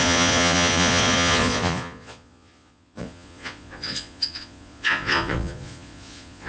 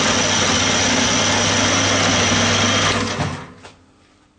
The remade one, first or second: first